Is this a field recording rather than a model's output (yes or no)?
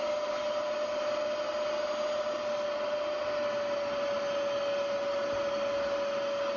yes